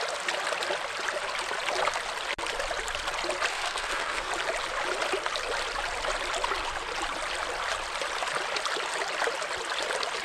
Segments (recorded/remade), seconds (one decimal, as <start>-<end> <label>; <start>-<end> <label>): 0.0-3.5 recorded; 3.5-4.3 remade; 4.3-10.2 recorded